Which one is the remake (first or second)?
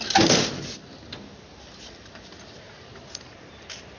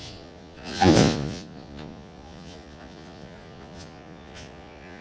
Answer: second